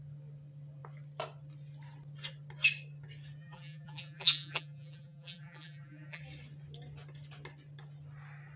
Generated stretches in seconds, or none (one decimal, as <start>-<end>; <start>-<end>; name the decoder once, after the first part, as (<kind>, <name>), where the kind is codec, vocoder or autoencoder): 3.4-6.2 (vocoder, BigVGAN v2)